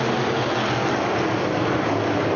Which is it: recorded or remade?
recorded